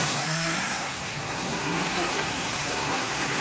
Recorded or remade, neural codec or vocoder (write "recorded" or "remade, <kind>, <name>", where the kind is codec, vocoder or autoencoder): remade, codec, SNAC